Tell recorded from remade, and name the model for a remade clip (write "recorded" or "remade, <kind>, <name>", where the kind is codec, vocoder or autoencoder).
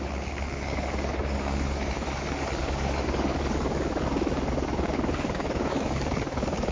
remade, codec, DAC